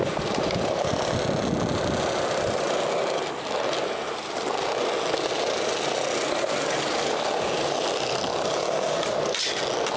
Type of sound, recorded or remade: recorded